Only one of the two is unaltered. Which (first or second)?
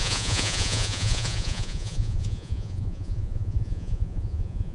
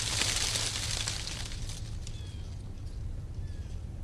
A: second